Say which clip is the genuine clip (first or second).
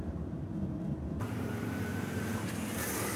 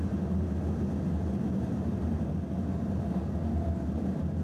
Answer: second